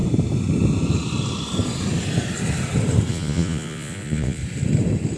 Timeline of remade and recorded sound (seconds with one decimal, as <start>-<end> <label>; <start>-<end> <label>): 0.0-3.1 recorded; 3.1-4.4 remade; 4.4-5.2 recorded